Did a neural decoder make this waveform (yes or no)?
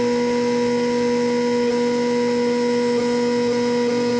no